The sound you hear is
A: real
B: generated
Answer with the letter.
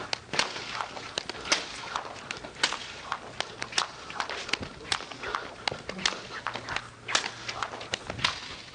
A